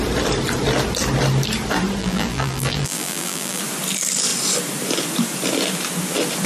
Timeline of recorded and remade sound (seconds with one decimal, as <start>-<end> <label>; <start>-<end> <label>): 0.0-2.0 recorded; 2.0-3.6 remade; 3.6-6.5 recorded